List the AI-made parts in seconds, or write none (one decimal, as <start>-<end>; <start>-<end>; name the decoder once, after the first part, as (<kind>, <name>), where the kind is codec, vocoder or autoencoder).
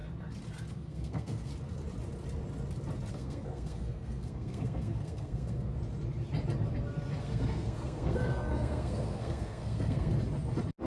0.7-1.5 (codec, SNAC); 3.1-5.8; 7.2-10.1